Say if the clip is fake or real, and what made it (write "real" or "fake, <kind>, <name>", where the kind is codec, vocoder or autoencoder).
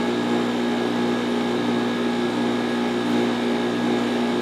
real